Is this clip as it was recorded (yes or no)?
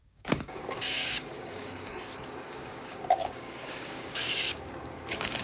no